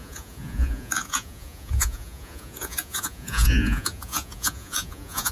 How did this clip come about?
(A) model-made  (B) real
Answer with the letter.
A